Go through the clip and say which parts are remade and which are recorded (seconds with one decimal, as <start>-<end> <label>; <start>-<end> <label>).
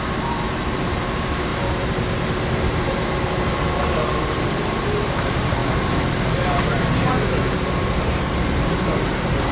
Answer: 0.0-9.5 remade